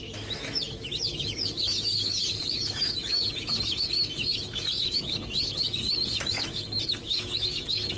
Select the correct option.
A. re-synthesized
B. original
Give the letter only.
A